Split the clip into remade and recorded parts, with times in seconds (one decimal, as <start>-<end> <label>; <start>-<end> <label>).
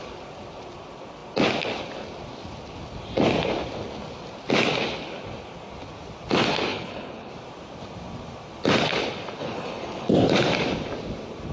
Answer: 0.0-6.7 recorded; 6.7-7.3 remade; 7.3-9.4 recorded; 9.4-10.1 remade; 10.1-11.5 recorded